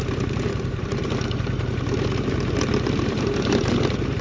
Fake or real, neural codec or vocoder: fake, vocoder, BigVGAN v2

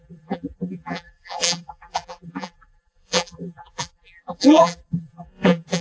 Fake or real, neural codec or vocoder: fake, vocoder, BigVGAN v2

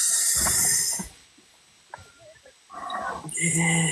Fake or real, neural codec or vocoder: real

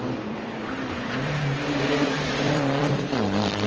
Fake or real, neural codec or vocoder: fake, vocoder, BigVGAN v2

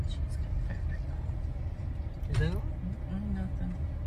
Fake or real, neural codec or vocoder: real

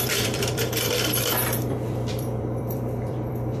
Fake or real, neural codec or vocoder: fake, vocoder, BigVGAN v2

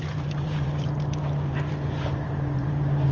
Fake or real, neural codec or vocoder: fake, vocoder, BigVGAN v2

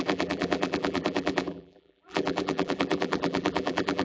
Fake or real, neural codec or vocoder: fake, vocoder, BigVGAN v2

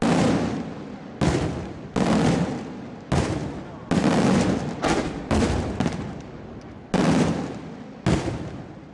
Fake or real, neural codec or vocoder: real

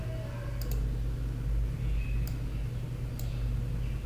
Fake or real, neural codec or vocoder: real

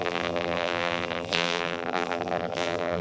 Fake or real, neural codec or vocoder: fake, vocoder, BigVGAN v2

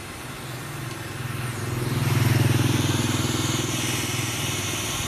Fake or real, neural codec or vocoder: real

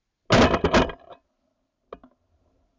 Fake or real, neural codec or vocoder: real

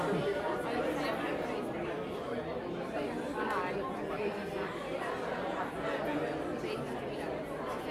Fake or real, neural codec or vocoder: real